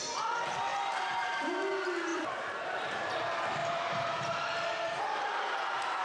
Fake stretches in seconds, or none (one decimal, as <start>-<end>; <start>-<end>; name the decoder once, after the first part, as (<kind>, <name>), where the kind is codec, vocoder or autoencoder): 0.7-1.5 (vocoder, BigVGAN v2); 2.1-3.0; 3.6-5.0